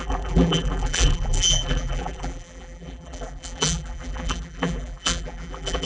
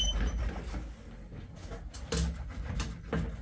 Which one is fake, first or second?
first